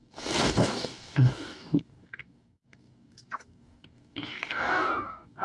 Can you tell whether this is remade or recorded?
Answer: remade